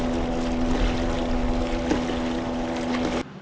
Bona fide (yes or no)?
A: yes